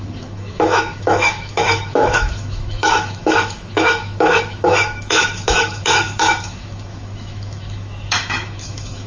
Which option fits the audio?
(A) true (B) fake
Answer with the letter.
B